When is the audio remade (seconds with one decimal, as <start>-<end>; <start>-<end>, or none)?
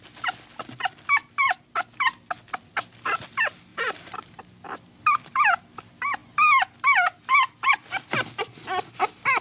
1.2-1.7; 3.7-4.5